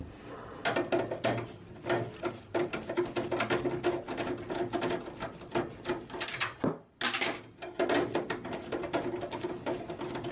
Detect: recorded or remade recorded